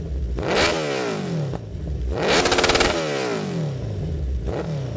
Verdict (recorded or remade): recorded